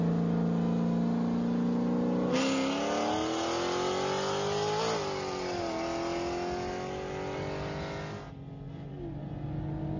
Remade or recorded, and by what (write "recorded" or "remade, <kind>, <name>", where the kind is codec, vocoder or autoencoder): recorded